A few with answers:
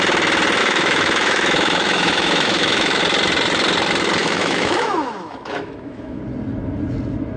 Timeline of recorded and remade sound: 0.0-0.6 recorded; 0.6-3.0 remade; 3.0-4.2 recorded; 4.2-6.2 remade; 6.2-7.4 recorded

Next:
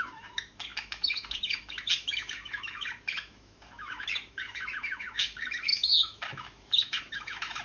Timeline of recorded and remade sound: 0.0-7.6 remade

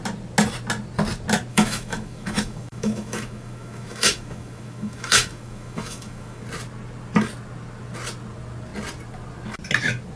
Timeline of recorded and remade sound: 0.0-1.5 recorded; 1.5-6.4 remade; 6.4-10.2 recorded

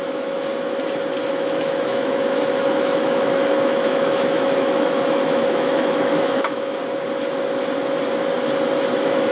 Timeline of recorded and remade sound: 0.0-0.5 remade; 0.5-1.3 recorded; 1.3-6.8 remade; 6.8-8.9 recorded; 8.9-9.3 remade